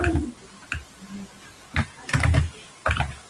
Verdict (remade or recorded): recorded